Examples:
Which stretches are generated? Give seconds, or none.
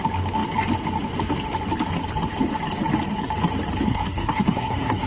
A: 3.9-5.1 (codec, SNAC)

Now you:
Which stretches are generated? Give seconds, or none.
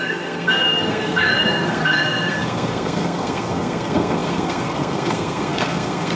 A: 0.0-6.2 (codec, SNAC)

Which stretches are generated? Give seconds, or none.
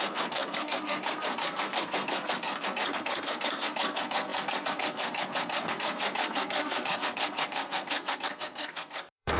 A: 0.0-9.4 (codec, SNAC)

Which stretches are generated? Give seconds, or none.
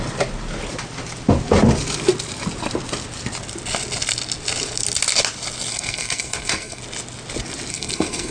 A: 5.7-6.8 (codec, SNAC); 7.7-8.3